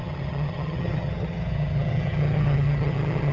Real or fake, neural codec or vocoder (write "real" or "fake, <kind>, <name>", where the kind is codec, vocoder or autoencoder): fake, vocoder, HiFi-GAN